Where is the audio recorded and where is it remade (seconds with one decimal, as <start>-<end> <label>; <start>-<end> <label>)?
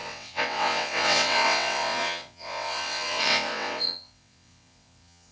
0.0-5.3 remade